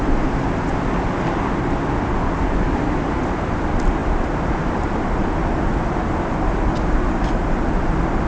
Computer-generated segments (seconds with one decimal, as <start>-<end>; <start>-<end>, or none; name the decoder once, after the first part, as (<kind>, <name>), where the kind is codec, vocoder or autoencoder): none